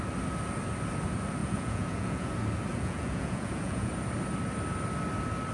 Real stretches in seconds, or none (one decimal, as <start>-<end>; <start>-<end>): 0.0-1.4; 2.3-2.7; 3.9-5.5